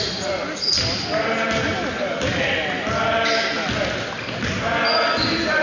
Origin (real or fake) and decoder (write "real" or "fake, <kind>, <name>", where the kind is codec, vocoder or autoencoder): real